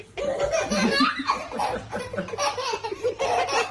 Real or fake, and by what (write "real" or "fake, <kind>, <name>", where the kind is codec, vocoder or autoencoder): real